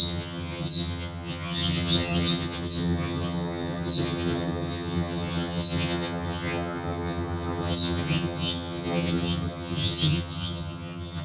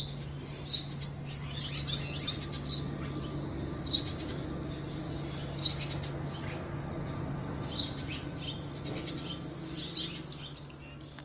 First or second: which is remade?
first